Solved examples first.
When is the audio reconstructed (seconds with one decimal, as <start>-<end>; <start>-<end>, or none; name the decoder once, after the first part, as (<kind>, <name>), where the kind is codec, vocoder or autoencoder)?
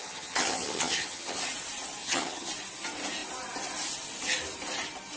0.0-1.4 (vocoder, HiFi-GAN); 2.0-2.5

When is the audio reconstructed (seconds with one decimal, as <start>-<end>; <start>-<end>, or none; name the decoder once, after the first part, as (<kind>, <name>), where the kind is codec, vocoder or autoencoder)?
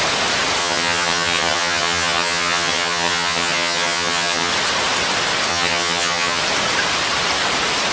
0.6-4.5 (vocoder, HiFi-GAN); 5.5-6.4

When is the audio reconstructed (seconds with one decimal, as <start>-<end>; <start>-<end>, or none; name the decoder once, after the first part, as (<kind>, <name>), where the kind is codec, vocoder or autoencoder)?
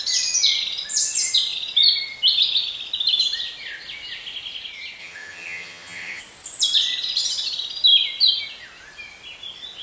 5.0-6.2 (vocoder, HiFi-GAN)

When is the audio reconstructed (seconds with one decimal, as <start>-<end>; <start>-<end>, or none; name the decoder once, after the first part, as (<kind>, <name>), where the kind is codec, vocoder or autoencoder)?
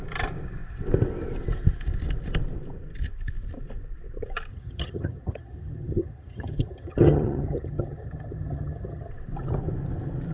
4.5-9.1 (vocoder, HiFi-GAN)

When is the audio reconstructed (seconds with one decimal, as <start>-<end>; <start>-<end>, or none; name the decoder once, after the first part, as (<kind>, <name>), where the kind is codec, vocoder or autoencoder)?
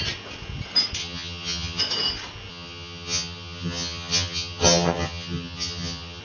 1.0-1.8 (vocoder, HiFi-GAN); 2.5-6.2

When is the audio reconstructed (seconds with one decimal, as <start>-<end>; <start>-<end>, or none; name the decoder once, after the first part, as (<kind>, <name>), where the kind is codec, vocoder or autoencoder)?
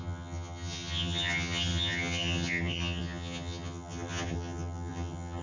0.0-5.4 (vocoder, HiFi-GAN)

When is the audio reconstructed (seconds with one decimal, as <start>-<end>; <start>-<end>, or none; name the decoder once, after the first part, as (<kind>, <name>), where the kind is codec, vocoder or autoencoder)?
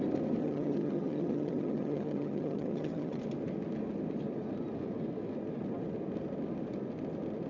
0.4-3.2 (vocoder, HiFi-GAN)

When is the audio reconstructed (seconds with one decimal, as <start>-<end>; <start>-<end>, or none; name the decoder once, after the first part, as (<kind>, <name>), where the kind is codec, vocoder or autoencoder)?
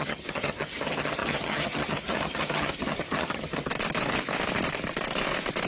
0.0-3.7 (vocoder, HiFi-GAN)